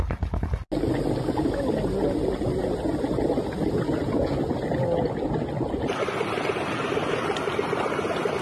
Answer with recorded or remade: recorded